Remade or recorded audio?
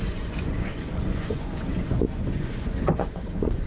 remade